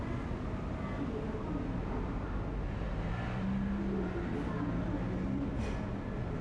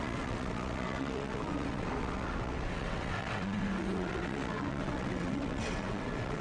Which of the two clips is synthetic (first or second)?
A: second